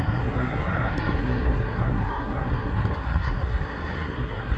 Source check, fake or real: fake